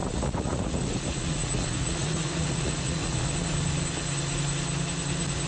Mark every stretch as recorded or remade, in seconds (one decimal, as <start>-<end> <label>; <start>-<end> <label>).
0.0-3.3 remade; 3.3-5.5 recorded